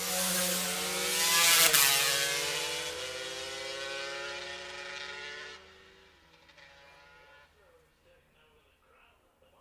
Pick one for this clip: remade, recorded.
recorded